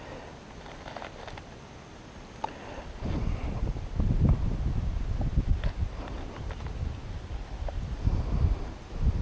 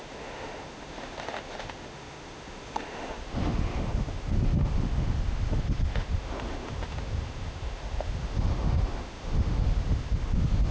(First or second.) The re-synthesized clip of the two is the second